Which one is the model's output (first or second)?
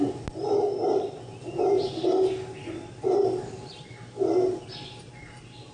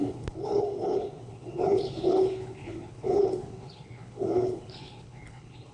second